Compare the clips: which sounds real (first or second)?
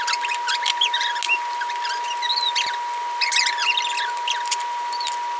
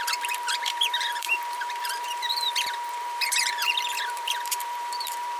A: first